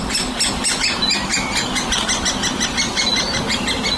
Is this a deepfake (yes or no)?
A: no